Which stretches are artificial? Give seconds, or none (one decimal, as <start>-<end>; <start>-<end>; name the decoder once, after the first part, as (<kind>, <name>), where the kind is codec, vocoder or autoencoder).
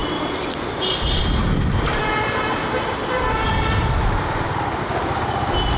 0.0-1.2 (vocoder, BigVGAN v2)